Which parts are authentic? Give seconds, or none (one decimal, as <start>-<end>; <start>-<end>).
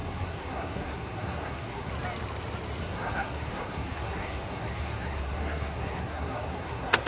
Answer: 1.9-2.8